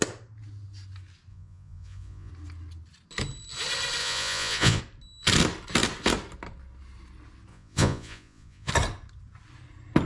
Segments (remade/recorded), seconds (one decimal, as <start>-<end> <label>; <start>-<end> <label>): 0.0-1.3 recorded; 1.3-2.3 remade; 2.3-4.0 recorded; 4.0-4.8 remade; 4.8-7.5 recorded; 7.5-8.7 remade; 8.7-10.1 recorded